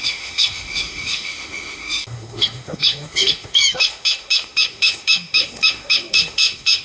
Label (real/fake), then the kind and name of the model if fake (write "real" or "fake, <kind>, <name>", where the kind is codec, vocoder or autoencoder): fake, autoencoder, DAC-VAE